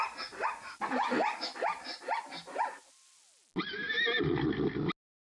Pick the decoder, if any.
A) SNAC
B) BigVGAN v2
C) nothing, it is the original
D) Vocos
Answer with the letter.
C